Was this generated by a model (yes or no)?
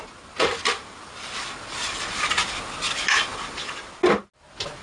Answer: no